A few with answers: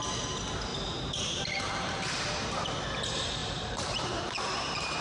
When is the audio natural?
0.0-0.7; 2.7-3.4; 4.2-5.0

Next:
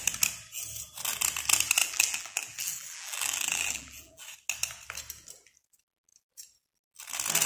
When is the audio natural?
0.0-1.8; 4.2-7.5

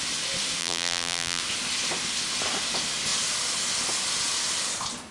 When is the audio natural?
0.0-0.6; 1.4-5.1

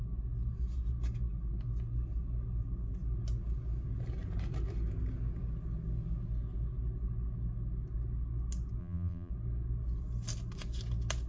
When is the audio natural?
0.0-8.8; 9.3-11.3

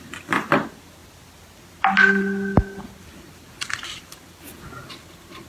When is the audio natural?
1.0-2.9

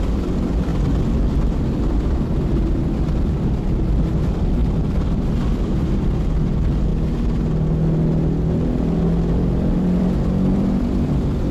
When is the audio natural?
6.9-9.3

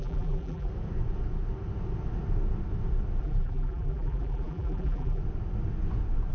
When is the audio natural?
0.7-3.2; 5.2-6.3

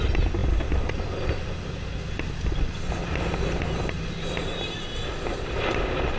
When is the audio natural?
0.0-6.2